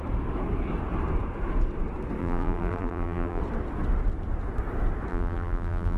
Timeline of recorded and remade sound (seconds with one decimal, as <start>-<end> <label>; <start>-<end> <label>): 0.0-2.2 recorded; 2.2-3.4 remade; 3.4-5.1 recorded; 5.1-6.0 remade